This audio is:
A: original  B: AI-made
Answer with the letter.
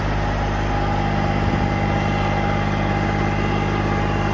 A